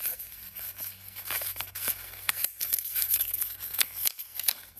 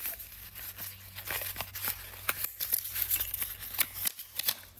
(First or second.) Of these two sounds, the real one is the second